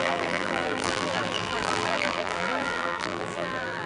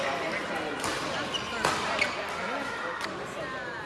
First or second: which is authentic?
second